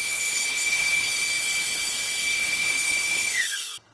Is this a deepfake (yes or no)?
yes